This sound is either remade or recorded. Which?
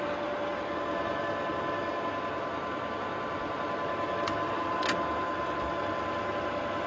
recorded